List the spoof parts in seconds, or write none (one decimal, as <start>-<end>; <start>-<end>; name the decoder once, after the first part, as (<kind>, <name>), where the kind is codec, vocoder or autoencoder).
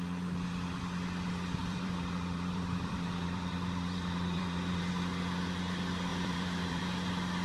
1.6-4.8 (vocoder, BigVGAN v2); 6.1-6.8